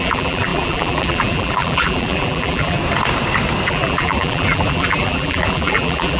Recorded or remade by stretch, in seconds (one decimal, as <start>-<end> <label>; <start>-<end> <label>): 0.0-2.8 remade; 2.8-3.7 recorded; 3.7-6.2 remade